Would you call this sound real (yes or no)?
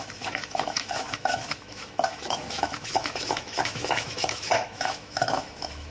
no